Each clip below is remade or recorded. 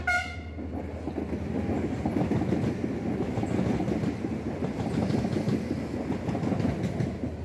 recorded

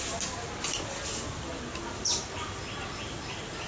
recorded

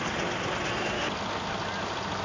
recorded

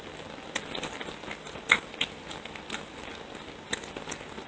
recorded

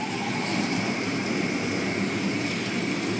recorded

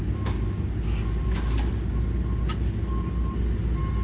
recorded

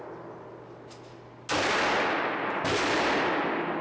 recorded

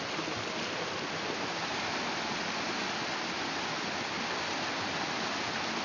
recorded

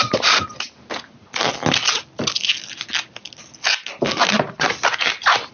recorded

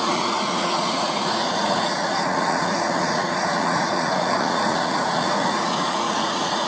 remade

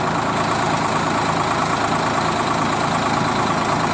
recorded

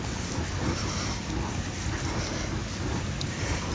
recorded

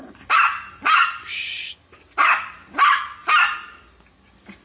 recorded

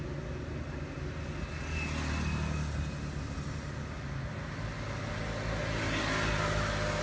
recorded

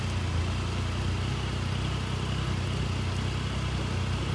recorded